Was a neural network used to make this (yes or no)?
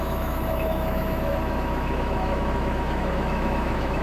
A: yes